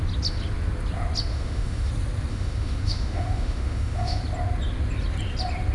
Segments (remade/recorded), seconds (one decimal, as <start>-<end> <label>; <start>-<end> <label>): 0.0-1.3 recorded; 1.3-1.9 remade; 1.9-2.3 recorded; 2.3-4.2 remade; 4.2-5.7 recorded